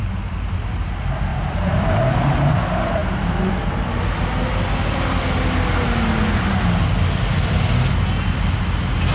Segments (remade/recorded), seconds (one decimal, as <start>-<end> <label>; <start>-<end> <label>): 0.0-1.3 recorded; 1.3-2.5 remade; 2.5-9.1 recorded